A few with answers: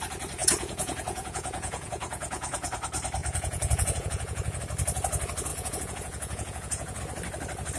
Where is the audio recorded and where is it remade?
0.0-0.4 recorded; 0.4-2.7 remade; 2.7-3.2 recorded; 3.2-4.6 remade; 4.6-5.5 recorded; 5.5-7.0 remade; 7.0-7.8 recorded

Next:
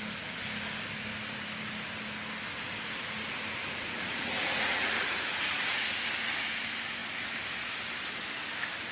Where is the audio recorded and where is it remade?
0.0-3.6 recorded; 3.6-6.1 remade; 6.1-8.9 recorded

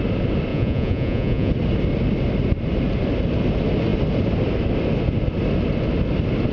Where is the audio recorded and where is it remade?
0.0-0.5 recorded; 0.5-1.5 remade; 1.5-6.5 recorded